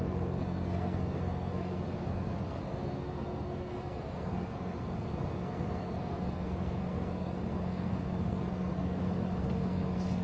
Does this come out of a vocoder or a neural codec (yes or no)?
yes